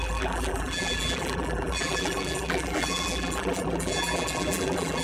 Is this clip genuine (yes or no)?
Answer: no